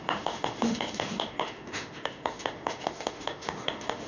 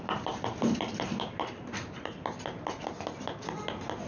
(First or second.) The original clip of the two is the second